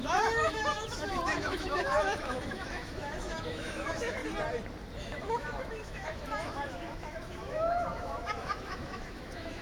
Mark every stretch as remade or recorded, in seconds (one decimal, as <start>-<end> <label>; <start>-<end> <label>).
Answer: 0.0-4.2 remade; 4.2-5.0 recorded; 5.0-9.6 remade